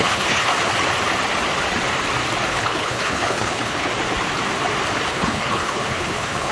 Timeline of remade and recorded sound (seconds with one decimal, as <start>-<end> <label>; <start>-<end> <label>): 0.0-0.5 remade; 0.5-2.5 recorded; 2.5-3.9 remade; 3.9-5.1 recorded; 5.1-6.5 remade